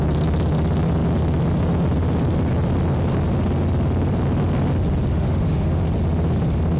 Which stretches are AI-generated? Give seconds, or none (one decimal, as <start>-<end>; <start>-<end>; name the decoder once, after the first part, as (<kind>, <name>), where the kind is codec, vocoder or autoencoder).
5.1-5.8 (autoencoder, DAC-VAE)